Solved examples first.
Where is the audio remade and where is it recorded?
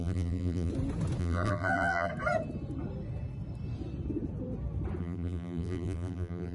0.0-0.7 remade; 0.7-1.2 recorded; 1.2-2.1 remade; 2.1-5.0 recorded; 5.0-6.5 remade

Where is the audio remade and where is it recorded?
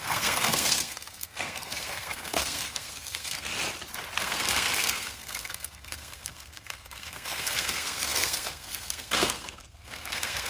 0.0-3.5 remade; 3.5-4.2 recorded; 4.2-10.5 remade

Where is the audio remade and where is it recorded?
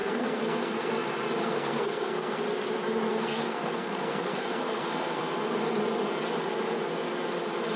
0.0-0.9 remade; 0.9-1.4 recorded; 1.4-2.4 remade; 2.4-3.1 recorded; 3.1-5.2 remade; 5.2-7.8 recorded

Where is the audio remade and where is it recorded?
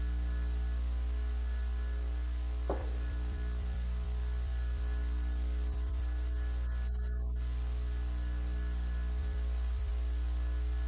0.0-2.8 recorded; 2.8-6.0 remade; 6.0-9.2 recorded; 9.2-9.9 remade; 9.9-10.9 recorded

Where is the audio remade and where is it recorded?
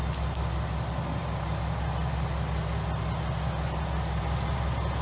0.0-5.0 recorded